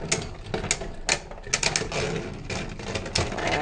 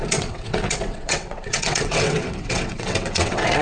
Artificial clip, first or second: second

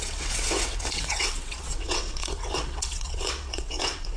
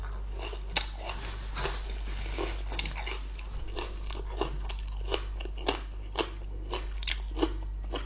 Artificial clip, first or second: first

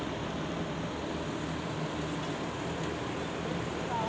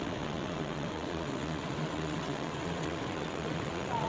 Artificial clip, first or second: second